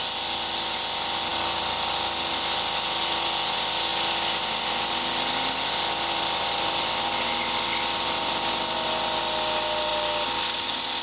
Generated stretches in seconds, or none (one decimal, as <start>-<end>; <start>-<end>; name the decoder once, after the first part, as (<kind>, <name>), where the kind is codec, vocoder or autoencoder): none